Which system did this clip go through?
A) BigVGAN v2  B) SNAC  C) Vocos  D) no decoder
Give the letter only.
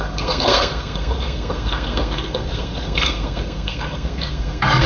B